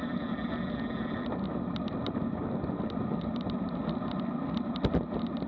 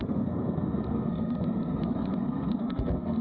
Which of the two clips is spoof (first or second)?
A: second